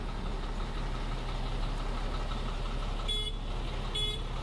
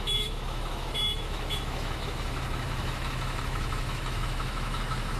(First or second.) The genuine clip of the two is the first